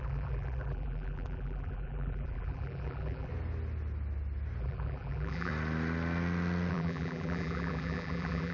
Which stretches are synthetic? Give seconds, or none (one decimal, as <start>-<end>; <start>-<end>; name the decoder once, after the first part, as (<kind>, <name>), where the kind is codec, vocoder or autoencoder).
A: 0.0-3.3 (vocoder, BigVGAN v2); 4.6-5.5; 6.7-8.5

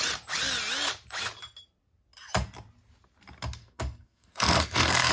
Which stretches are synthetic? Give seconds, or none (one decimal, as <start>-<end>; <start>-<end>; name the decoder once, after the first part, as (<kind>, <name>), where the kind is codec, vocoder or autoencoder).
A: 3.6-5.1 (codec, SNAC)

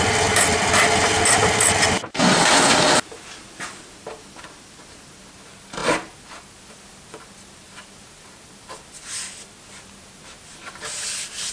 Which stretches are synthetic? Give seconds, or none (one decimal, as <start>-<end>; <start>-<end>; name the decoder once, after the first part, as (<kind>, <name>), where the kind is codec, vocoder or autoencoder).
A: none